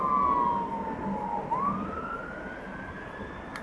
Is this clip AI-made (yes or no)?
no